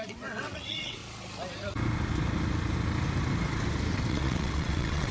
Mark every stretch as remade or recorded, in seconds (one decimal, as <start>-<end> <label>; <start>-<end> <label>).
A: 0.0-1.0 remade; 1.0-4.1 recorded; 4.1-5.1 remade